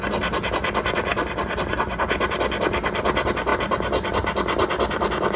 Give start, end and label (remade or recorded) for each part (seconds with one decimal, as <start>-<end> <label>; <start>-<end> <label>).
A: 0.0-5.4 recorded